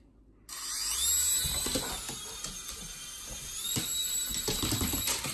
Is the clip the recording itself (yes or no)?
yes